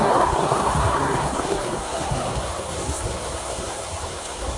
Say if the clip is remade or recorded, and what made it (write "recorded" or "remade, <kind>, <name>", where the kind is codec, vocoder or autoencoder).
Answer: remade, codec, SNAC